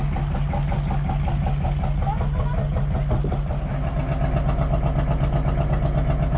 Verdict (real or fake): real